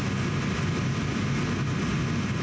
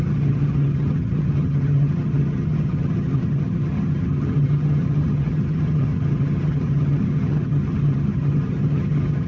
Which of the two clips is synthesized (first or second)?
second